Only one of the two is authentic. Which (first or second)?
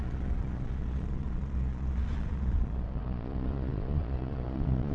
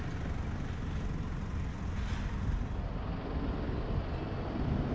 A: second